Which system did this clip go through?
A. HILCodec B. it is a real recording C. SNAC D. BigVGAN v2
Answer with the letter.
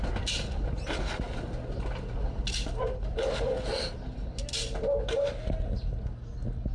B